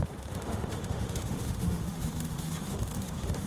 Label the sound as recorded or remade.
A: remade